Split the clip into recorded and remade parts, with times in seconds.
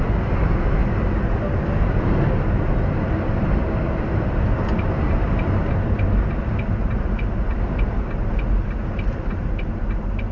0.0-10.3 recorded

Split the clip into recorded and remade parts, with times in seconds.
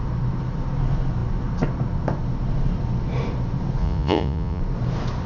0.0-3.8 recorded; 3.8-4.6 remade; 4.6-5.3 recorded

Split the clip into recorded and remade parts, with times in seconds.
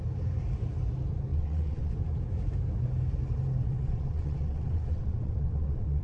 0.0-1.3 recorded; 1.3-1.9 remade; 1.9-3.6 recorded; 3.6-6.0 remade